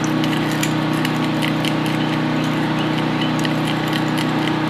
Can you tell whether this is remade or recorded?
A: recorded